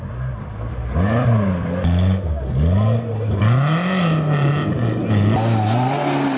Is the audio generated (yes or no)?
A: no